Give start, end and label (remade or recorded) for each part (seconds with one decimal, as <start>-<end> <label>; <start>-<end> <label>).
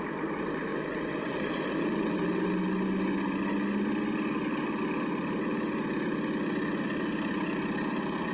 0.0-0.7 recorded; 0.7-2.1 remade; 2.1-8.3 recorded